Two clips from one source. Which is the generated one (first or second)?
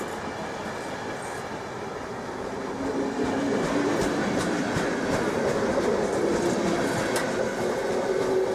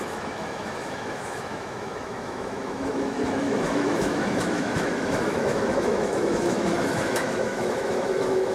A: second